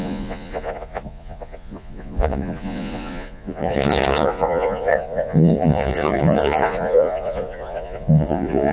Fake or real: fake